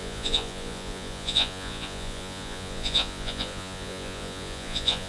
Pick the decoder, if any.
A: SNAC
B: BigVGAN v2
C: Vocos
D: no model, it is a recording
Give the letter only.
C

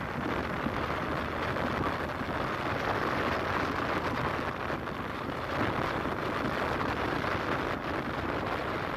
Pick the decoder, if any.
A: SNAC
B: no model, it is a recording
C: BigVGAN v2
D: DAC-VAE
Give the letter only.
B